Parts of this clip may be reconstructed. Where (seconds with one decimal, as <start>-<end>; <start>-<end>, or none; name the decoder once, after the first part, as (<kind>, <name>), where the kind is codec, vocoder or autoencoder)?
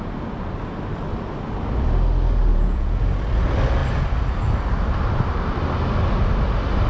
2.5-3.0 (vocoder, Vocos)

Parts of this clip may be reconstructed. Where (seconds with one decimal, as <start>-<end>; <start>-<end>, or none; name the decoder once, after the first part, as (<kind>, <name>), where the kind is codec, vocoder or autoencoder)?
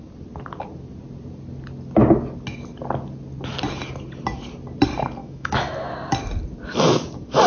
5.2-5.9 (autoencoder, DAC-VAE)